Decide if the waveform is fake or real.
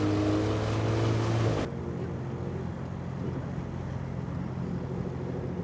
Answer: real